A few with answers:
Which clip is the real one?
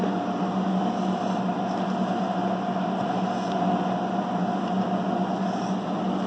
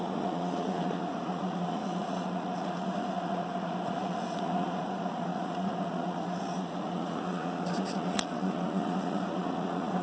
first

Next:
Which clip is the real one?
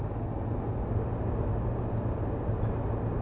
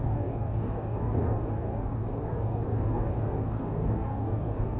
first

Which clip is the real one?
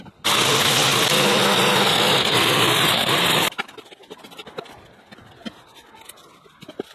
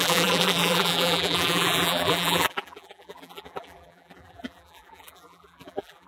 first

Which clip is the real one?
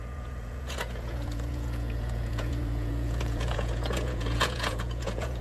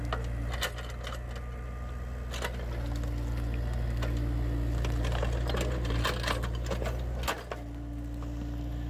second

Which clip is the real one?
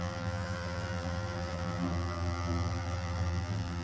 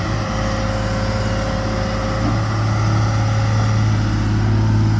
second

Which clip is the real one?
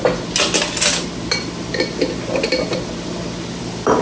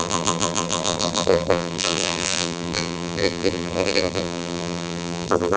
first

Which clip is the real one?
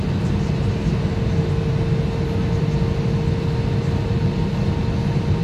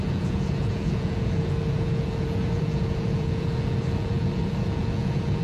first